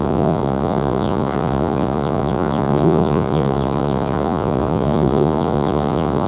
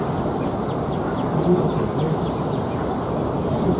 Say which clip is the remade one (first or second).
first